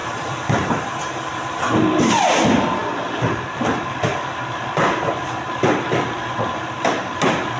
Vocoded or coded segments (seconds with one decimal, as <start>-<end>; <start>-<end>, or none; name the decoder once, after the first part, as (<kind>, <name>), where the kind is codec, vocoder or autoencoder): 0.0-0.9 (vocoder, BigVGAN v2)